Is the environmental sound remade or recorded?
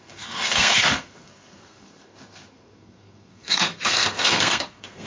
remade